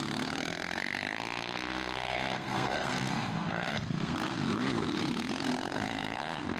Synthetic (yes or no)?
yes